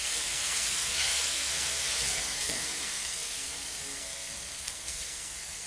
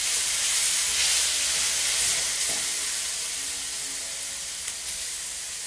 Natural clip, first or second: second